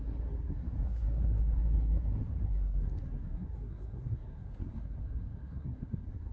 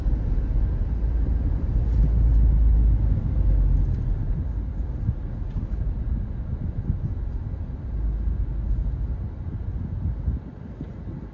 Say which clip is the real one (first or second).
second